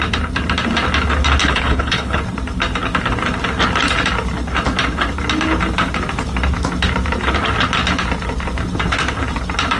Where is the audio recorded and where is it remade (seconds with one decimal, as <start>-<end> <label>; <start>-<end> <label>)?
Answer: 0.0-1.4 recorded; 1.4-2.2 remade; 2.2-9.8 recorded